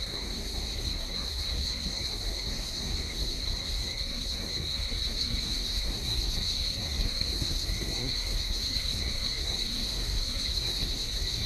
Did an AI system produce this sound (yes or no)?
yes